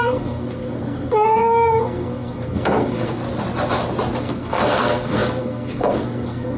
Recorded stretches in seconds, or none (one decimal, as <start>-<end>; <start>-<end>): 3.2-4.2